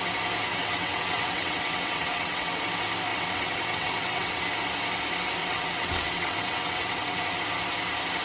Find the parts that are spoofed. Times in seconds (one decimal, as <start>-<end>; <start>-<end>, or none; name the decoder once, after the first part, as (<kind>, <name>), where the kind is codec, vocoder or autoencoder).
0.5-2.6 (vocoder, WaveNeXt); 3.1-4.4; 5.4-7.4